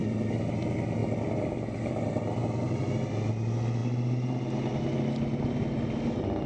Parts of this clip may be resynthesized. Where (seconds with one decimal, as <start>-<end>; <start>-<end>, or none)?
none